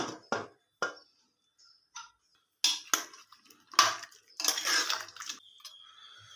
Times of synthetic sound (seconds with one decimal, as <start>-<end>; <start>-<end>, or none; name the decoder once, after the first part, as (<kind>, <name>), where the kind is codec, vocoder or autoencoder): none